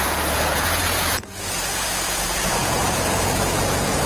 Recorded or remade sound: remade